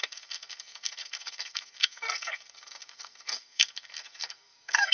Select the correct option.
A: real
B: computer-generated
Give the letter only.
B